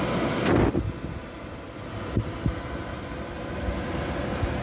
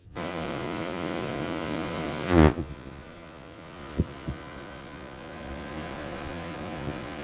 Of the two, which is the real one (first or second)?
first